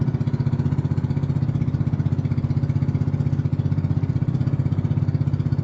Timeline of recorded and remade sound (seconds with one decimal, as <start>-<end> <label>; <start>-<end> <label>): 0.0-5.6 recorded